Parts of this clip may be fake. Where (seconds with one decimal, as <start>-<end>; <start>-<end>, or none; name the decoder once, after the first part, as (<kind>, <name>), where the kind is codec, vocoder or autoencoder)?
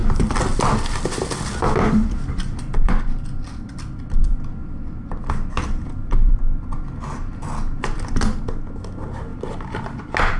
0.0-2.9 (vocoder, BigVGAN v2); 9.3-10.0